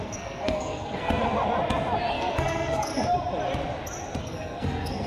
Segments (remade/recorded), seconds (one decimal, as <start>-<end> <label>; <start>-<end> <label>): 0.0-1.2 remade; 1.2-2.1 recorded; 2.1-2.9 remade; 2.9-4.2 recorded; 4.2-5.1 remade